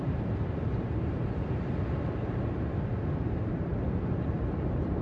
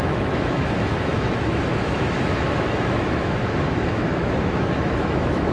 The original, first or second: first